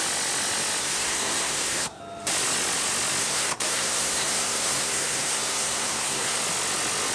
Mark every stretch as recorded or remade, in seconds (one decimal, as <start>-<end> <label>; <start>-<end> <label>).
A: 0.0-0.8 recorded; 0.8-2.0 remade; 2.0-3.2 recorded; 3.2-6.4 remade; 6.4-7.1 recorded